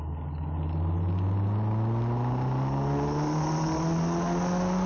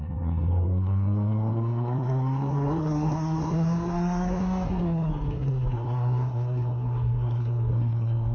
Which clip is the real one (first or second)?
first